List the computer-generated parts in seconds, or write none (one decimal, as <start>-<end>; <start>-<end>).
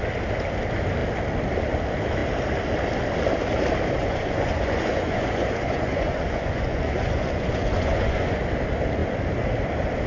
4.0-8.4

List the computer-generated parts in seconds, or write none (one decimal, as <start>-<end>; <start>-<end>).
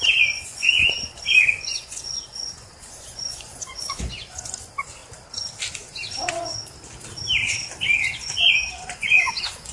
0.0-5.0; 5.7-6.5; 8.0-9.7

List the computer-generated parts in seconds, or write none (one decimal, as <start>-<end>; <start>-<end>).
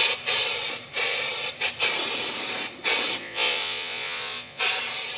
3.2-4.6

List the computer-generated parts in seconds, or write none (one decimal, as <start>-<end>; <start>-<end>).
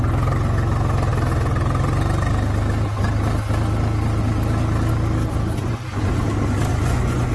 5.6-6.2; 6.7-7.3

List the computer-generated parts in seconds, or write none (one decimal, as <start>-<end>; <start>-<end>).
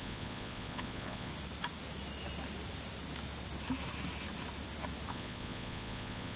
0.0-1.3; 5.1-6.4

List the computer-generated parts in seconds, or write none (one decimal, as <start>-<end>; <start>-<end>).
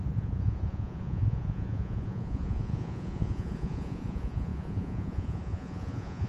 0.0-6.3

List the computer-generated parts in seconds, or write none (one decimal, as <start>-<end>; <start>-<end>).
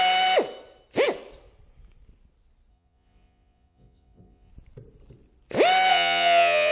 2.7-4.5; 5.9-6.7